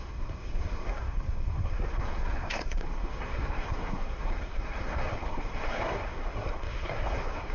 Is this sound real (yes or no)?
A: no